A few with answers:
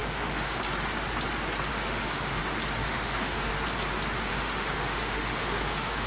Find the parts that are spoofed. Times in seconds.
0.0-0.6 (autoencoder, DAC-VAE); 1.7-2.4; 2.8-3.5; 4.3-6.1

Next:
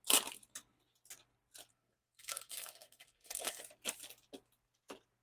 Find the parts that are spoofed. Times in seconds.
1.7-3.6 (codec, SNAC)

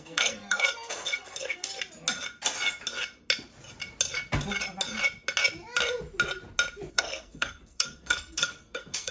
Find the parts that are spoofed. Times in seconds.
0.0-1.7 (codec, SNAC); 6.9-9.1

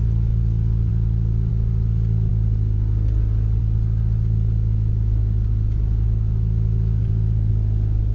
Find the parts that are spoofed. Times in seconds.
7.0-7.5 (vocoder, Vocos)

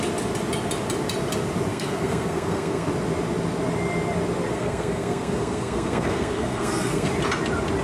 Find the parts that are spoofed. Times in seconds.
1.7-2.9 (codec, SNAC); 4.5-7.1

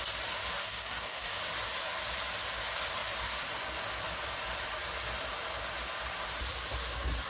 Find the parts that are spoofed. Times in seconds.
0.6-1.4 (codec, DAC)

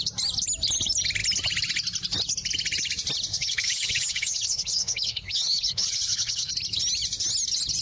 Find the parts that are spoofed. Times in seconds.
3.3-6.5 (codec, HILCodec)

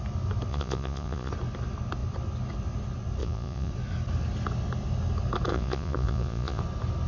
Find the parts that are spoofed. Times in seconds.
0.5-1.3 (vocoder, Vocos); 3.2-3.7; 5.5-6.6